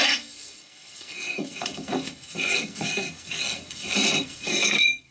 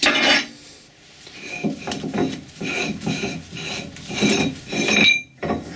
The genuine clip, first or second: second